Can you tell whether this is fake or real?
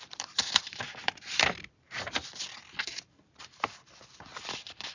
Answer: fake